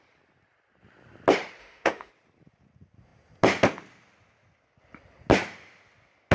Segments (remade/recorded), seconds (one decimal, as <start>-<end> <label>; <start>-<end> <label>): 0.0-1.6 recorded; 1.6-2.1 remade; 2.1-6.3 recorded